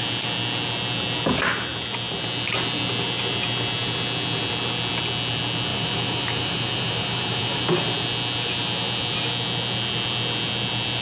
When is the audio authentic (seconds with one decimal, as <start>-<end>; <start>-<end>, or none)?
0.0-5.7; 7.6-11.0

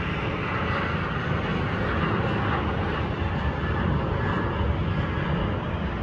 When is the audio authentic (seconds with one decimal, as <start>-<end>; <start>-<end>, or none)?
0.0-6.0

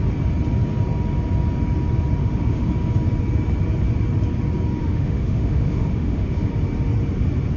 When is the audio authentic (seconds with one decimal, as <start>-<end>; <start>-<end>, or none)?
0.0-2.2; 2.7-4.8; 6.5-7.6

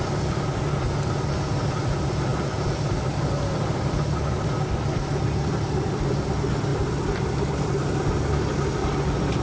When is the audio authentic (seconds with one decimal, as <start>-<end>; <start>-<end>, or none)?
0.0-2.3; 3.9-6.7; 7.8-9.4

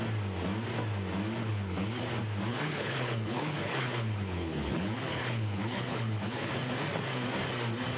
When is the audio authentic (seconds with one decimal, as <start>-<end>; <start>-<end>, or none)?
0.0-1.4; 2.0-2.5; 6.5-8.0

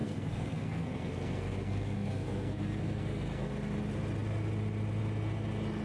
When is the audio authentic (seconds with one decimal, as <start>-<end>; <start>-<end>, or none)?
3.5-5.8